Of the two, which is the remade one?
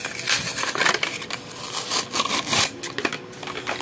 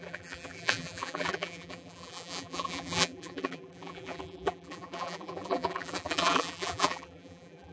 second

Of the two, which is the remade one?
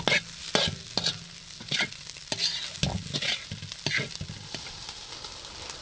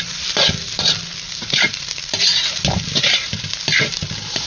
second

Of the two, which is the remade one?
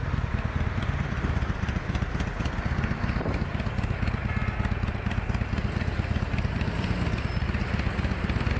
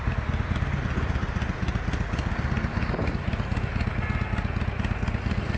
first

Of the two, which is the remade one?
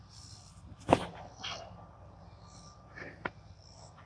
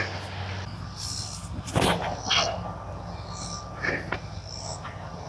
first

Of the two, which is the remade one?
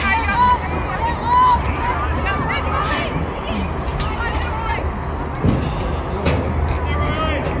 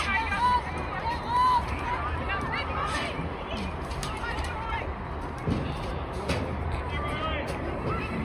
second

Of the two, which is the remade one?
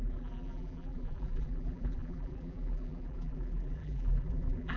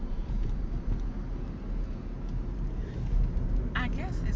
first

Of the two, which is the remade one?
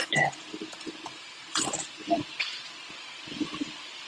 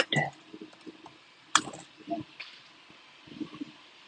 first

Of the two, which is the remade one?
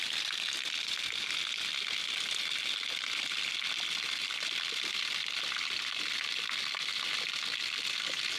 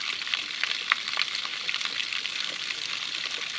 second